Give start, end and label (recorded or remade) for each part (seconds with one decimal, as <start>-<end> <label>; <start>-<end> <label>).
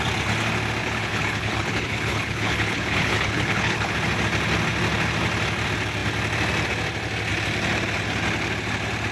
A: 0.0-0.8 recorded; 0.8-3.9 remade; 3.9-9.1 recorded